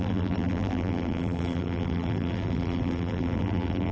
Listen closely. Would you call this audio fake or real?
fake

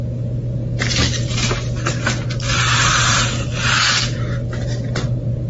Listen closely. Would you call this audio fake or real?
real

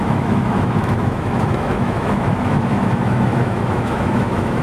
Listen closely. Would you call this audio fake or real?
fake